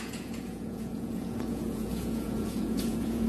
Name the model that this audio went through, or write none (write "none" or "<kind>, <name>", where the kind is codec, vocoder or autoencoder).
vocoder, Vocos